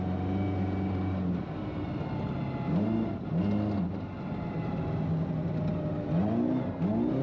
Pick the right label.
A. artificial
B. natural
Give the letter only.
B